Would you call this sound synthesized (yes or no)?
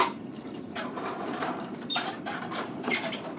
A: yes